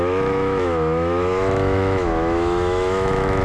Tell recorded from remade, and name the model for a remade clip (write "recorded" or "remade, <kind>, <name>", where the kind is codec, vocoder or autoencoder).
remade, autoencoder, DAC-VAE